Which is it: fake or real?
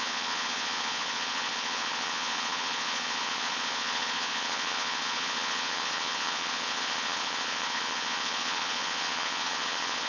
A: fake